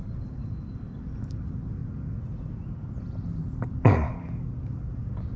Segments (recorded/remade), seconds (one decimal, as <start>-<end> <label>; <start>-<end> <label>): 0.0-5.4 recorded